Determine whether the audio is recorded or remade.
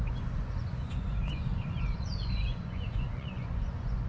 remade